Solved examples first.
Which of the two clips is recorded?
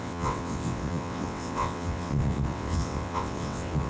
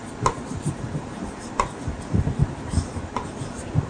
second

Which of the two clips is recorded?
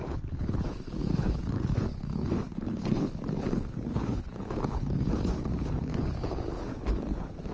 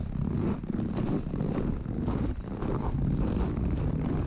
second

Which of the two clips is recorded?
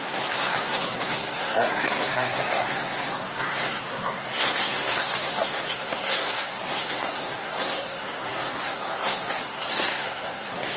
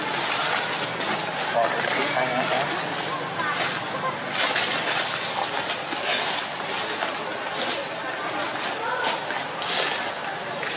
second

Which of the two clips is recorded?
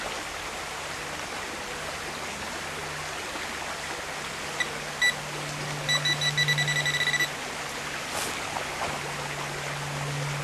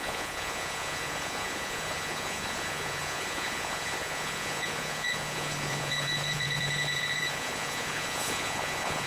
first